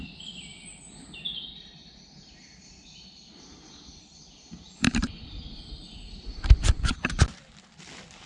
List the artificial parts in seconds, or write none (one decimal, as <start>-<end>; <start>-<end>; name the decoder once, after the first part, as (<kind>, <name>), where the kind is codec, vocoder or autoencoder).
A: none